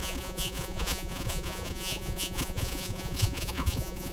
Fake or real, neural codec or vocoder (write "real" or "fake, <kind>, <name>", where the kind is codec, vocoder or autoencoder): fake, vocoder, Vocos